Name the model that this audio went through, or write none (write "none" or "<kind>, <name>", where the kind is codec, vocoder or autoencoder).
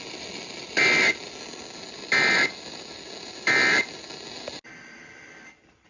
none